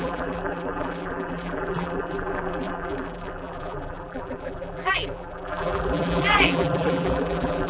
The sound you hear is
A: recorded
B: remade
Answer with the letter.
B